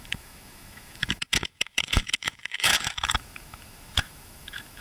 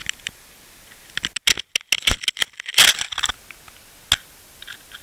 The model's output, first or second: first